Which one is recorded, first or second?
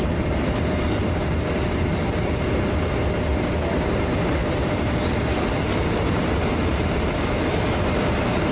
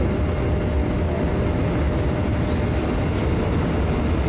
second